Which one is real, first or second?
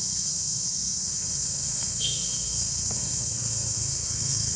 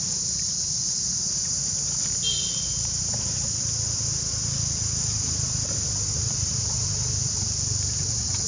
second